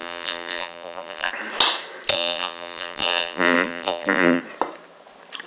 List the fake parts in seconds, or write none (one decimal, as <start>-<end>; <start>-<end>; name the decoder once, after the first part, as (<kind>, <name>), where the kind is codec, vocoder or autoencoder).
0.0-1.3 (vocoder, BigVGAN v2); 2.1-4.4